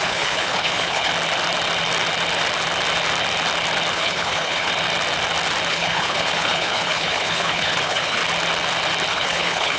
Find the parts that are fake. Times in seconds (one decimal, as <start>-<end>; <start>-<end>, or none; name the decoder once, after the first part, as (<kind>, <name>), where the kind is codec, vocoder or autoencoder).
0.0-1.1 (codec, HILCodec); 3.9-4.7; 5.7-8.2; 9.1-9.8